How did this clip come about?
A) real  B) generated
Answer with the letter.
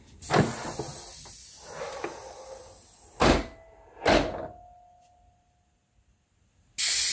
A